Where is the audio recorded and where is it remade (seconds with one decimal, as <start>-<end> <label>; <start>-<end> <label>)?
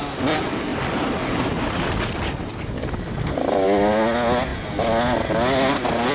0.0-6.1 recorded